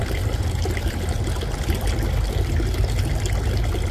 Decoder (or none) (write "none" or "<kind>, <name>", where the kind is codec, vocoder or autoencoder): none